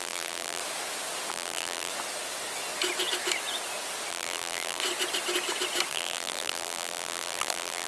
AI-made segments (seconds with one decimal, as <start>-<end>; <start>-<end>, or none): 0.0-0.6; 1.3-1.9; 4.1-4.8; 5.9-7.9

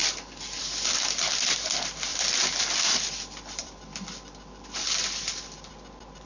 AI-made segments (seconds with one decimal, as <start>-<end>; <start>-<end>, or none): 2.1-5.7